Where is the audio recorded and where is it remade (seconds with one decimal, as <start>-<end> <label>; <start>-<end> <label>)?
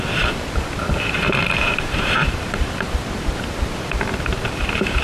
0.0-0.8 recorded; 0.8-3.8 remade; 3.8-5.0 recorded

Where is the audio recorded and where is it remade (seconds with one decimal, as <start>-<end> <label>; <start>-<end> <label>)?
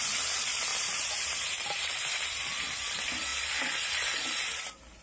0.0-0.7 recorded; 0.7-2.4 remade; 2.4-5.0 recorded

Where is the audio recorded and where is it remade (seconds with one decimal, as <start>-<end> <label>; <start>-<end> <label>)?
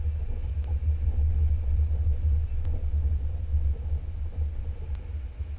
0.0-5.6 recorded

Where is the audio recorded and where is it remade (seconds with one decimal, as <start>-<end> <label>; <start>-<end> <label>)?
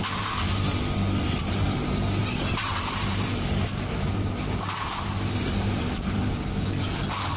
0.0-2.2 recorded; 2.2-6.3 remade; 6.3-7.4 recorded